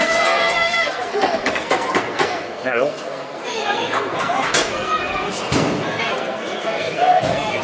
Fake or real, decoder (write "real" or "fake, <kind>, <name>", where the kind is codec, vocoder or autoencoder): fake, codec, SNAC